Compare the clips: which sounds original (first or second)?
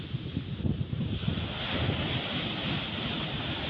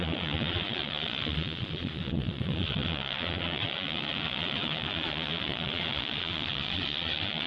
first